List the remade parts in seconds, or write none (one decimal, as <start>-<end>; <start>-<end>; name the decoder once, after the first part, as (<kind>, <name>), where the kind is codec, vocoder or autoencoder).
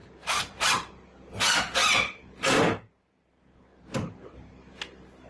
none